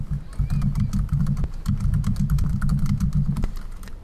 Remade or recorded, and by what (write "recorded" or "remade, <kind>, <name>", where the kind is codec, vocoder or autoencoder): recorded